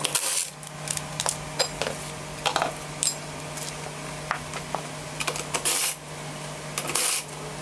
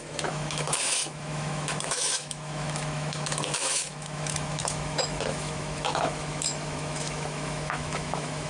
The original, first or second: first